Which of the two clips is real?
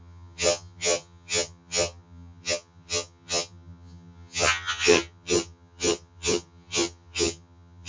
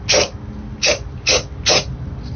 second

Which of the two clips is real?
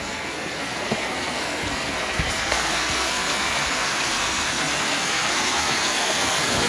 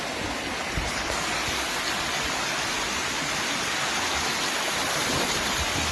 second